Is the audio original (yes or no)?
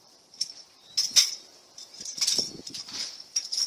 no